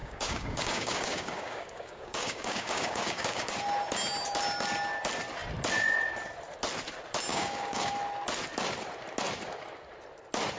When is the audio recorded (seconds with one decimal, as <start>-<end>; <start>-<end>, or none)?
3.5-7.3; 7.9-10.6